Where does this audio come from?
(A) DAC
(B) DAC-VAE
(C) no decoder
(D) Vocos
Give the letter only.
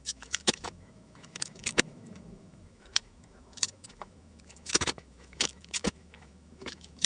B